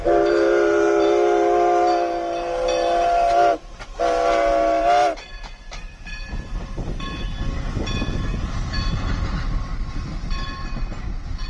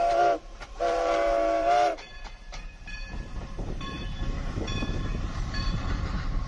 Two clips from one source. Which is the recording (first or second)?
first